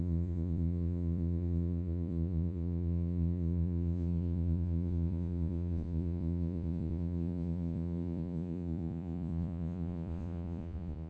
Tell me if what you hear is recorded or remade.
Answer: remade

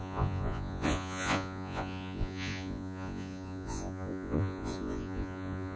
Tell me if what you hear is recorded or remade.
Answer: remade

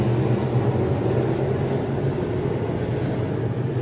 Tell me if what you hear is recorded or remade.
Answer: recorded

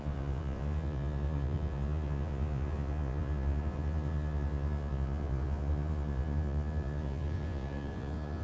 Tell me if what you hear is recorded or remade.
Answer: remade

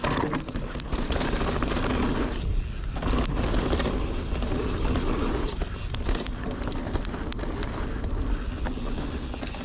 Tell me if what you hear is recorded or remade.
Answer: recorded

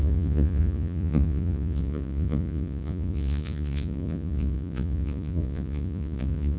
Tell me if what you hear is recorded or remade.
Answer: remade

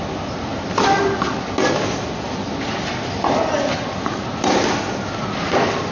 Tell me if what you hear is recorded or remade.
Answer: recorded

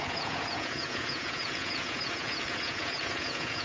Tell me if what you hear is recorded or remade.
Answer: remade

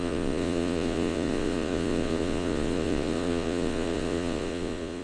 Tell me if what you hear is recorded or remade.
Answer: remade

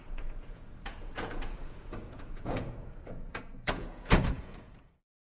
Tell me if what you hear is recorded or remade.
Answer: remade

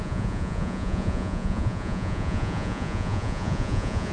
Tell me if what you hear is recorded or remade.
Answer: remade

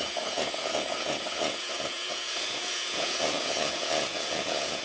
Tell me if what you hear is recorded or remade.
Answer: remade